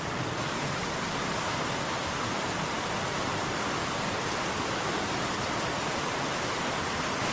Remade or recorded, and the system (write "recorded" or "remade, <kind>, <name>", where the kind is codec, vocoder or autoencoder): recorded